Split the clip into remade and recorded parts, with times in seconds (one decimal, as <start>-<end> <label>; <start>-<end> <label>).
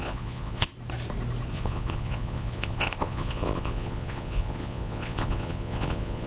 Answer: 0.0-0.7 remade; 0.7-1.5 recorded; 1.5-6.3 remade